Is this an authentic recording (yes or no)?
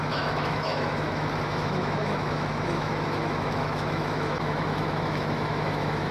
no